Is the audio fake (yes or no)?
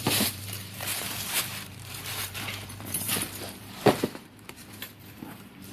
yes